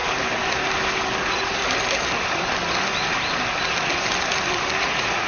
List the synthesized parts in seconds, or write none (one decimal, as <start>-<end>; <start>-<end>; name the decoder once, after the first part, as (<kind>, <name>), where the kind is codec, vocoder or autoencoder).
1.2-1.6 (vocoder, Vocos); 4.8-5.3